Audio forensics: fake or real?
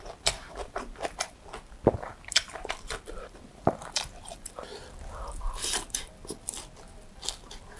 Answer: fake